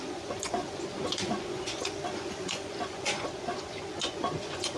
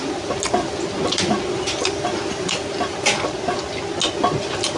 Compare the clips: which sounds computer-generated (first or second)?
first